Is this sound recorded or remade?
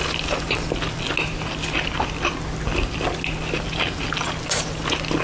recorded